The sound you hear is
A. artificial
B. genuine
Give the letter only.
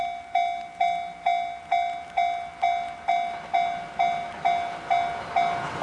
B